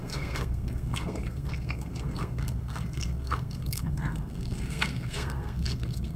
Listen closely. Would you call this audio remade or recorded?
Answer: remade